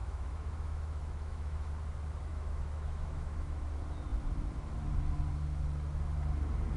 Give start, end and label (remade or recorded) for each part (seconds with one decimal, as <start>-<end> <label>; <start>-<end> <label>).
0.0-1.7 remade; 1.7-2.3 recorded; 2.3-3.6 remade; 3.6-6.8 recorded